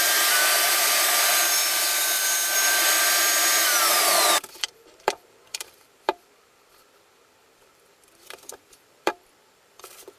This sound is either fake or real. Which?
fake